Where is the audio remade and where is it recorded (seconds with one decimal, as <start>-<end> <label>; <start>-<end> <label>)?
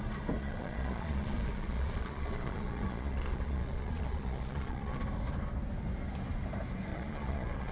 0.0-0.4 recorded; 0.4-5.0 remade; 5.0-6.9 recorded; 6.9-7.7 remade